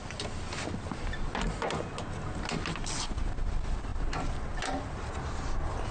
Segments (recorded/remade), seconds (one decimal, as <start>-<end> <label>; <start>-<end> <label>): 0.0-5.9 recorded